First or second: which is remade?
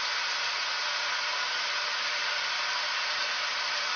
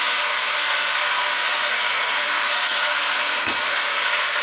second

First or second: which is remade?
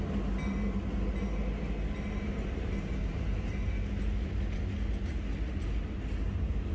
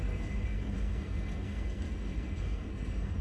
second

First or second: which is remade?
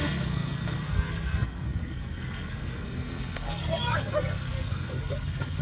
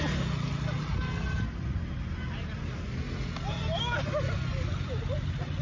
first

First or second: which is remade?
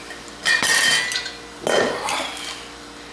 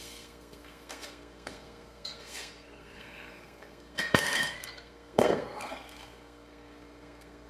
second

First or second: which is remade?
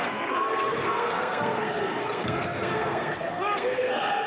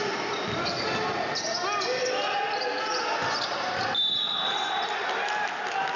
first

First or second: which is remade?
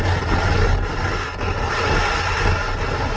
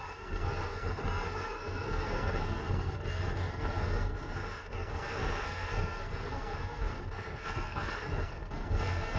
second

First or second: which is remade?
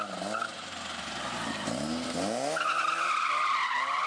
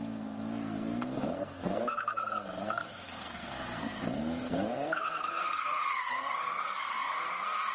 second